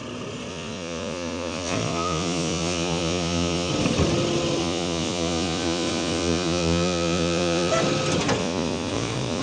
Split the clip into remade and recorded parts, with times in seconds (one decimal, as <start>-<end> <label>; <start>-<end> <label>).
0.0-0.5 recorded; 0.5-3.7 remade; 3.7-4.6 recorded; 4.6-7.7 remade; 7.7-8.4 recorded; 8.4-9.4 remade